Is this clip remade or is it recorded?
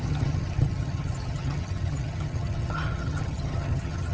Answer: remade